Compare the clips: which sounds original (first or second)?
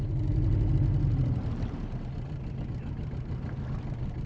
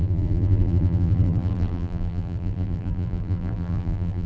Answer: first